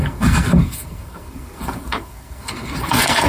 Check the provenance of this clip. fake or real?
fake